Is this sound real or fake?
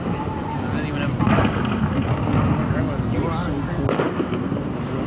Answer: real